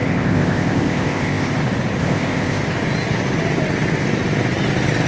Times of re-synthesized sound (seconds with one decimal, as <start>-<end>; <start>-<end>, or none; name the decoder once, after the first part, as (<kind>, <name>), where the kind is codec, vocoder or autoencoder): 0.0-1.5 (codec, ZipCodec); 2.0-2.6